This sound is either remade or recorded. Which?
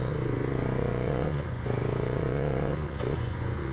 remade